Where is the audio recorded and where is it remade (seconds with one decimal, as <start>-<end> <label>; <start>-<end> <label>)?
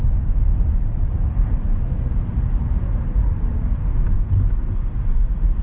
0.0-0.5 recorded; 0.5-3.9 remade; 3.9-5.6 recorded